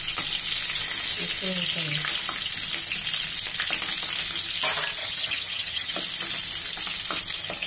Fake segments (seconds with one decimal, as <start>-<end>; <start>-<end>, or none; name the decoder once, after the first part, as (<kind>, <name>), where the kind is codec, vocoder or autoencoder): 5.0-5.9 (vocoder, HiFi-GAN)